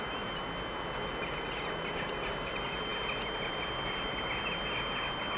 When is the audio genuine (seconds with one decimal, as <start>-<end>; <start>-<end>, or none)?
0.0-5.4